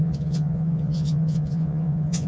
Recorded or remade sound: remade